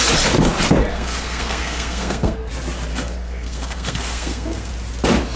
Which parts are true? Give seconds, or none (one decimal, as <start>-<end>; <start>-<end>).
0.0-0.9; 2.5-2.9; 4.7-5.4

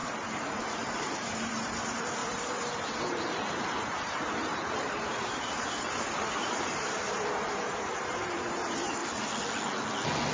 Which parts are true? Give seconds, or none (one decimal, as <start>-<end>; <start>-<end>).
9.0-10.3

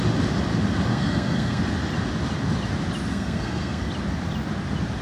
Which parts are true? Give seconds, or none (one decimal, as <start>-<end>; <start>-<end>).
0.0-0.9; 1.6-3.1; 3.9-5.0

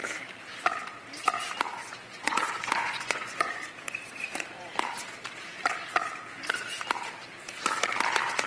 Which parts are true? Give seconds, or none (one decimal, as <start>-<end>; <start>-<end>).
0.0-1.7; 3.7-8.5

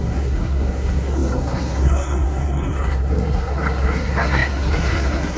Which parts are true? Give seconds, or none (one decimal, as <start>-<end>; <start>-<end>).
none

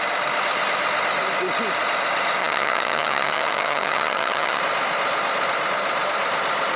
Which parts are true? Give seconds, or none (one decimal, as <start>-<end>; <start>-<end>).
0.0-2.4; 4.6-6.8